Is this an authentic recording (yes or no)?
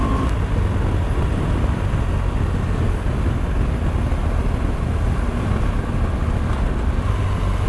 yes